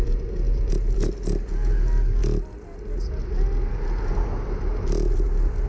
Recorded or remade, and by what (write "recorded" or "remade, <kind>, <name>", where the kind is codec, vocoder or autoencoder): recorded